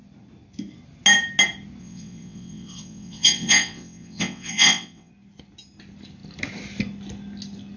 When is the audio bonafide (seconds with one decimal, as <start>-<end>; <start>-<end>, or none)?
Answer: 0.0-1.8; 5.1-7.8